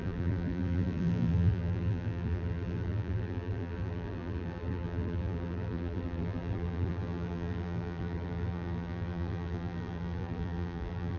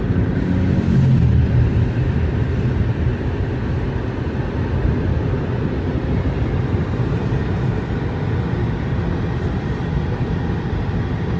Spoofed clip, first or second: first